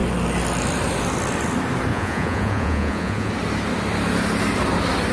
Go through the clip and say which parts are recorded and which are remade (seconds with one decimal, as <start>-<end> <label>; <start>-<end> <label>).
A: 0.0-1.9 recorded; 1.9-3.3 remade; 3.3-5.1 recorded